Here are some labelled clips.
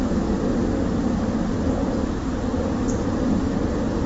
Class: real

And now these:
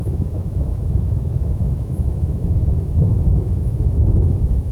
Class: fake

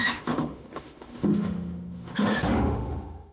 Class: fake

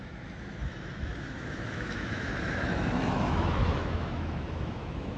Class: fake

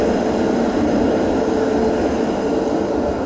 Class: real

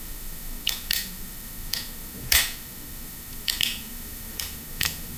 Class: fake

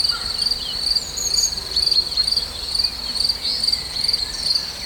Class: real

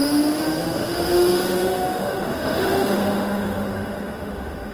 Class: fake